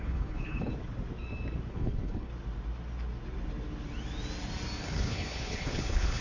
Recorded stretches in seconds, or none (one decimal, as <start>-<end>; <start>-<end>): 0.7-1.7; 2.3-4.8